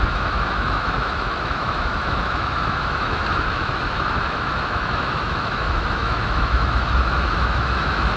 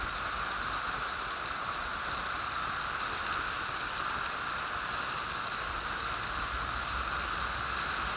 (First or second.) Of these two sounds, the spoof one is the first